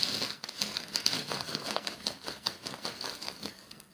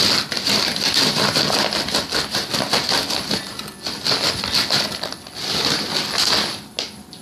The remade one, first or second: first